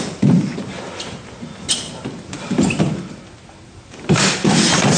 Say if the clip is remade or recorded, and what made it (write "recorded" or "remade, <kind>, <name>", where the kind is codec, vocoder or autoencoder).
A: recorded